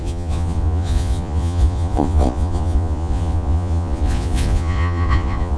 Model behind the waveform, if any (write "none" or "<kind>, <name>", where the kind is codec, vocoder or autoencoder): vocoder, Vocos